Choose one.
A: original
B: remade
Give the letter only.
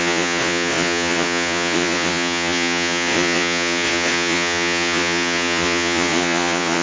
B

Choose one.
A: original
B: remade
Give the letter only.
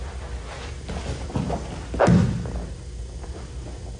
A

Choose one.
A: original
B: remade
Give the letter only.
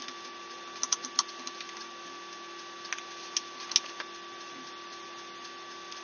A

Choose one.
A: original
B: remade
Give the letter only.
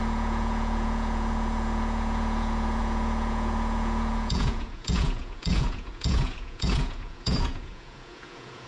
B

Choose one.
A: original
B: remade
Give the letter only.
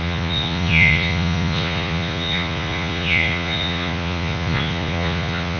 B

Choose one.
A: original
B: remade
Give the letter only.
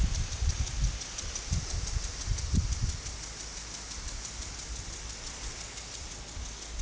A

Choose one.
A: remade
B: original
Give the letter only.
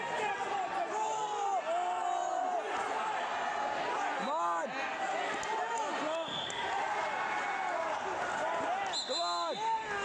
B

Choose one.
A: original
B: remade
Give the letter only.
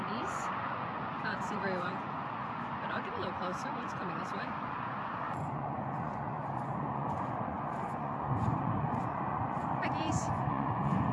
B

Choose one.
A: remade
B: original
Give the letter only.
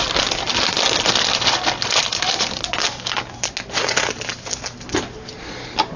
B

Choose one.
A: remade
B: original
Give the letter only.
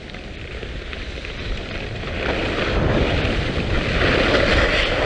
B